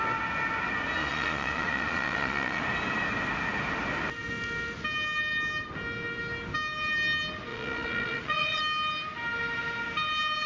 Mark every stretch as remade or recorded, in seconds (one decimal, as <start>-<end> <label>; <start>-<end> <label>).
0.0-1.0 recorded; 1.0-2.6 remade; 2.6-7.5 recorded; 7.5-8.6 remade; 8.6-10.5 recorded